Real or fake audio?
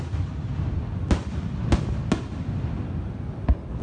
real